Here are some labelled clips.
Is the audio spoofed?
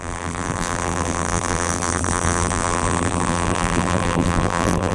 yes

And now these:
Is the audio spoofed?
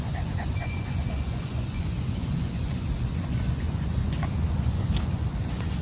yes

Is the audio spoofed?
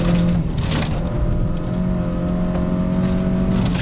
no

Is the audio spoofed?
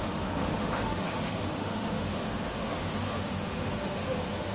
yes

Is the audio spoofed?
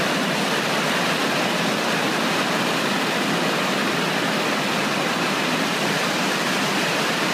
no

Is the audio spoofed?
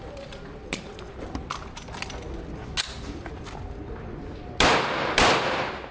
no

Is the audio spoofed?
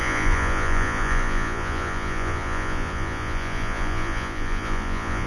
yes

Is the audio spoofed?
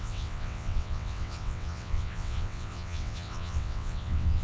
yes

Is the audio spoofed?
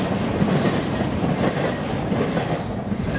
no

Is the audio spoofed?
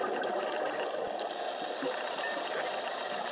no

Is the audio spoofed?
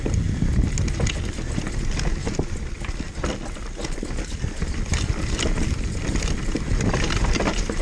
no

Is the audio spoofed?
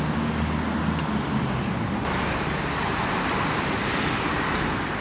no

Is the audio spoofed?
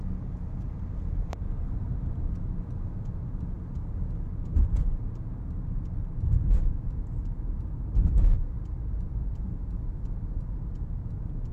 yes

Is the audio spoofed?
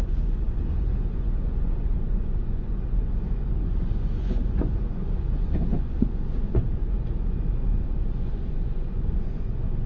yes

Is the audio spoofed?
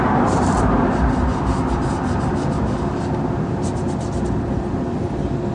no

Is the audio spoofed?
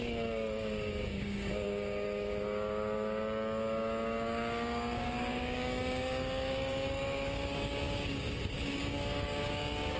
yes